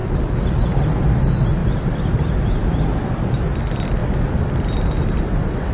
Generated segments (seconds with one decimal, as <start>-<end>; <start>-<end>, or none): 0.0-1.2; 1.6-2.2; 4.0-5.2